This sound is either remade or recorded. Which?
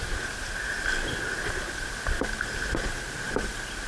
recorded